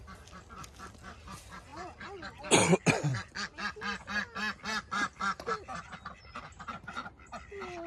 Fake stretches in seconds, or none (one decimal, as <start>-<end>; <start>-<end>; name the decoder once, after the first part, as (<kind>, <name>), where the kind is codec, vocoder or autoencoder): none